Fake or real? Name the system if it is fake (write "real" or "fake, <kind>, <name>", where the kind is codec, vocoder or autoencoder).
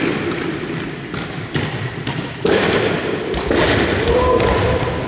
real